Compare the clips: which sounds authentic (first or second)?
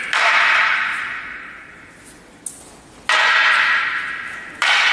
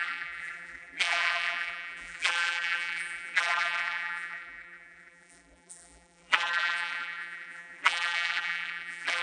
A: first